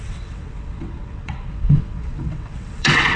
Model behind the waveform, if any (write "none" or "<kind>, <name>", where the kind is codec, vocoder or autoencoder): vocoder, WaveNeXt